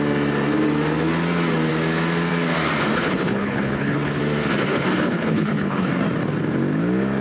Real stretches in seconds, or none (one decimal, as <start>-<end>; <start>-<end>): 0.0-2.9; 4.2-4.7; 5.9-7.2